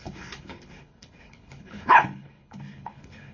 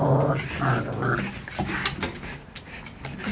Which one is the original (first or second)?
second